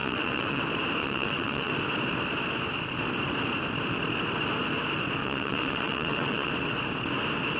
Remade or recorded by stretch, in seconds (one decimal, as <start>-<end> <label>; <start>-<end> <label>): 0.0-0.6 remade; 0.6-1.0 recorded; 1.0-1.7 remade; 1.7-5.2 recorded; 5.2-6.5 remade; 6.5-7.6 recorded